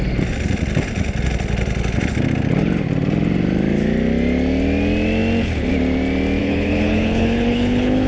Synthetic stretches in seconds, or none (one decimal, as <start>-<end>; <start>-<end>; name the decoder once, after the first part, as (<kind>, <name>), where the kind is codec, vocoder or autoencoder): 6.4-8.1 (codec, HILCodec)